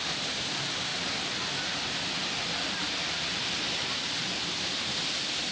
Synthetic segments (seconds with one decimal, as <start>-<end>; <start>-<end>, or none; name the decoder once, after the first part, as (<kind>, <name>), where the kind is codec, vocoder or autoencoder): none